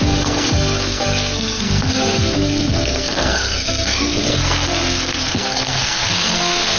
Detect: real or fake fake